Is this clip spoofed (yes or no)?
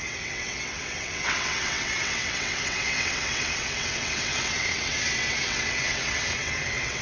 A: yes